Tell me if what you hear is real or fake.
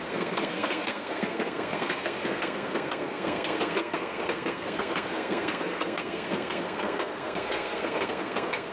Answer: fake